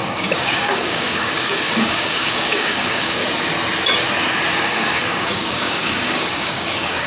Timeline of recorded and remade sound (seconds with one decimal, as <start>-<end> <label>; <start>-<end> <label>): 0.0-3.2 remade; 3.2-4.6 recorded; 4.6-7.1 remade